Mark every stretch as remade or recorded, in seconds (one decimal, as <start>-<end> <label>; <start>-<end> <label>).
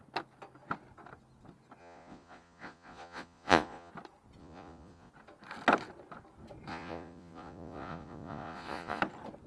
0.0-1.8 recorded; 1.8-3.9 remade; 3.9-4.4 recorded; 4.4-5.1 remade; 5.1-6.7 recorded; 6.7-9.0 remade; 9.0-9.5 recorded